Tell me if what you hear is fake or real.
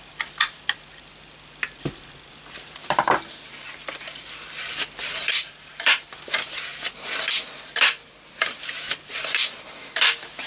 fake